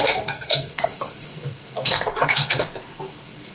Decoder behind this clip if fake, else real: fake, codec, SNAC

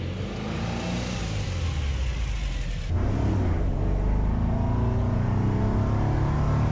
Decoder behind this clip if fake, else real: real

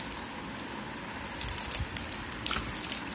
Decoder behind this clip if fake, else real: real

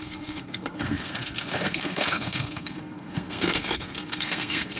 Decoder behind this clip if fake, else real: fake, codec, SNAC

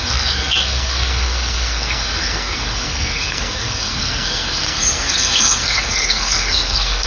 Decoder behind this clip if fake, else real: fake, codec, SNAC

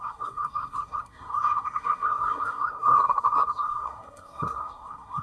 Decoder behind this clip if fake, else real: fake, codec, SNAC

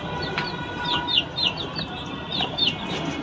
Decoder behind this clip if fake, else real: real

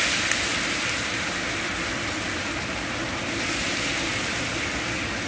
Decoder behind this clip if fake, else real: real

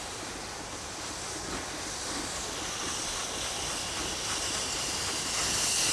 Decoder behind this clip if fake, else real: real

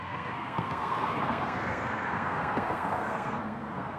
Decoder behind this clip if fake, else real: fake, codec, SNAC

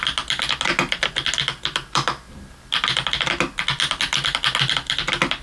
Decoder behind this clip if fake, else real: real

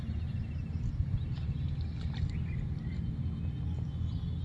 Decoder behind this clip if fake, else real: real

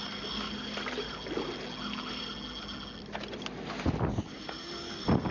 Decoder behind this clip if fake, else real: real